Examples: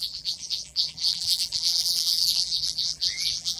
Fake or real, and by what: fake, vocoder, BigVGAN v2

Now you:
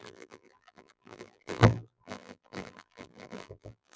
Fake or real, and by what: fake, vocoder, BigVGAN v2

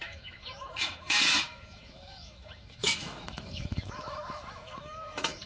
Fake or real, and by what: fake, autoencoder, DAC-VAE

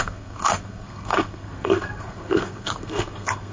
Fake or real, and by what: fake, codec, SNAC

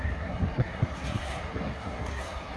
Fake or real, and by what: fake, codec, SNAC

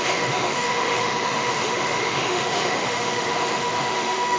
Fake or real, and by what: fake, autoencoder, DAC-VAE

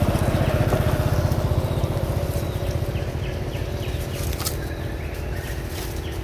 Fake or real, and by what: real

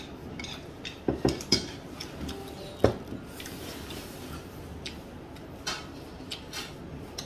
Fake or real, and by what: real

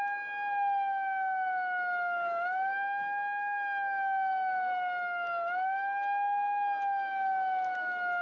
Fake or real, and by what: real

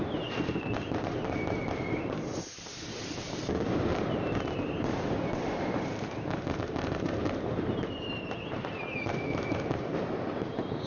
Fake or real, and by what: fake, vocoder, BigVGAN v2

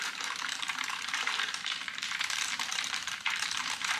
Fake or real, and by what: fake, vocoder, BigVGAN v2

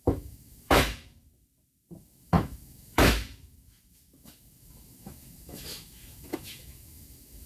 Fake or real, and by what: fake, autoencoder, DAC-VAE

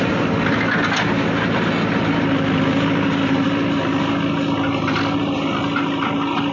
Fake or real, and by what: real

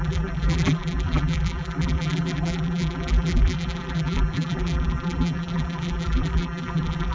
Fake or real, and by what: fake, vocoder, BigVGAN v2